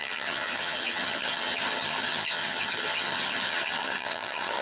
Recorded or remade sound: remade